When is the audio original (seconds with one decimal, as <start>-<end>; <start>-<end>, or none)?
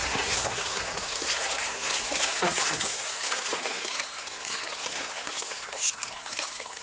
none